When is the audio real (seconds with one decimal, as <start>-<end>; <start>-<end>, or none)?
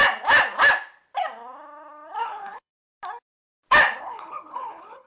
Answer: 0.0-2.2; 2.7-4.0